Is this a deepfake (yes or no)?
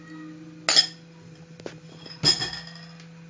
no